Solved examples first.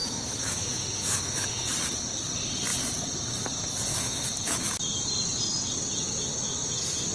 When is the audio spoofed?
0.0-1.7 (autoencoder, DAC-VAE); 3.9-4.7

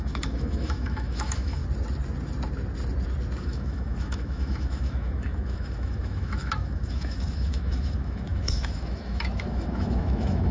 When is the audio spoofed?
0.0-1.6 (autoencoder, DAC-VAE); 3.4-10.5

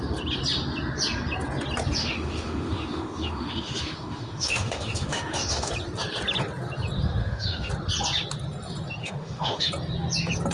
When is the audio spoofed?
2.0-5.7 (autoencoder, DAC-VAE); 7.2-7.7; 9.0-9.7